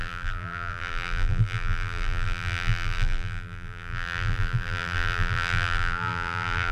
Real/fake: fake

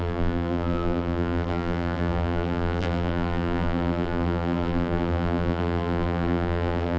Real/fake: fake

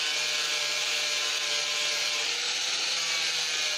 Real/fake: real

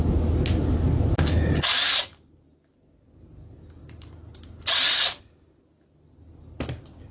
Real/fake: real